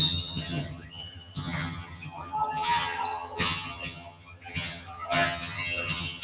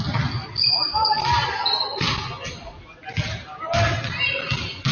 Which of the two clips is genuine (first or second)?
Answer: second